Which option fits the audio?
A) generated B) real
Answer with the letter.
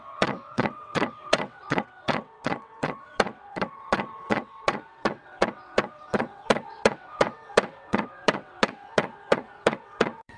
A